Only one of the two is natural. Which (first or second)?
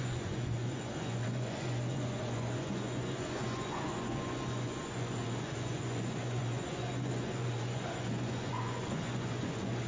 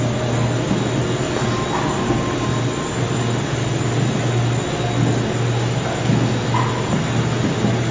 second